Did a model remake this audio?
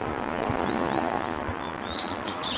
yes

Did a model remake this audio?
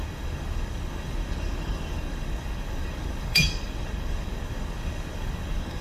yes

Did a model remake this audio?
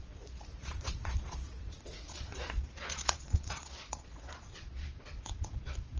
yes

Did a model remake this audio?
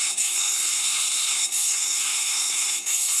yes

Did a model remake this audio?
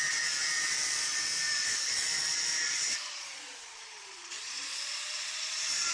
yes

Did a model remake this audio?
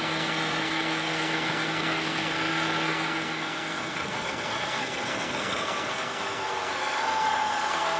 yes